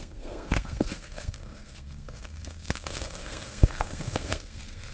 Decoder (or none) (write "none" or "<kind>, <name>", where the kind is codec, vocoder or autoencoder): codec, SNAC